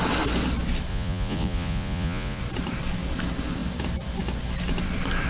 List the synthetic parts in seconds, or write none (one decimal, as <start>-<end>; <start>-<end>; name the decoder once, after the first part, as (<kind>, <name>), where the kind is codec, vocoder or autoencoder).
0.9-2.4 (vocoder, Vocos)